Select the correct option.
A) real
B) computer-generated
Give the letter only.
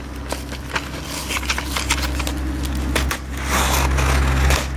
A